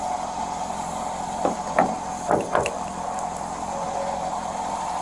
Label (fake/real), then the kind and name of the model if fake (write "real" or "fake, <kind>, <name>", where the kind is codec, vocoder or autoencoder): real